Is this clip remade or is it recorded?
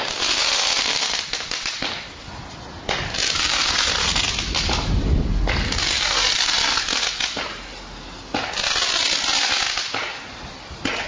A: recorded